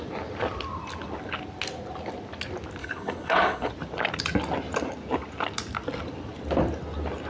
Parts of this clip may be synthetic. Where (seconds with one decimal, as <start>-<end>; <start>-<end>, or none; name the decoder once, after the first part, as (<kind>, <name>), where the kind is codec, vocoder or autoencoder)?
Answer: 2.8-3.7 (codec, HILCodec)